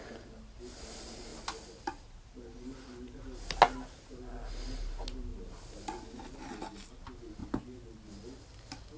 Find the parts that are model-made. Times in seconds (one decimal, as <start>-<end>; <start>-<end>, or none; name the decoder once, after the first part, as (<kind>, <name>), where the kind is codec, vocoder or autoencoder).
none